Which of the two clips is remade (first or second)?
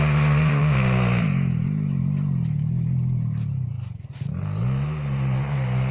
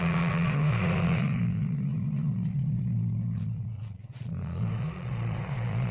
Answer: second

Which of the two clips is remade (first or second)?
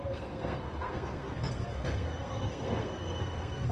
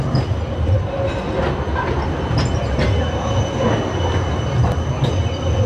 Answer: first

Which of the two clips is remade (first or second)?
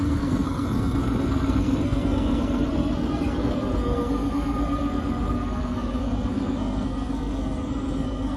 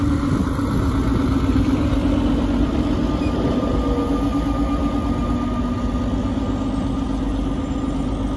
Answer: first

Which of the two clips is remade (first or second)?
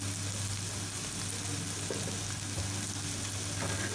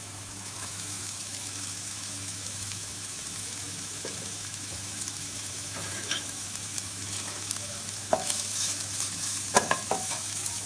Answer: second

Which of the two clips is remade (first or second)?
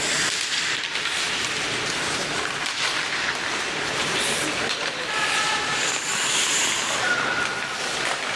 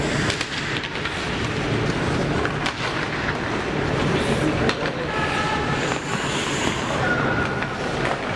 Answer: first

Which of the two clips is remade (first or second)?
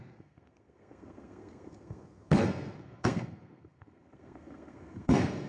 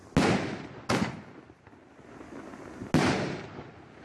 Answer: first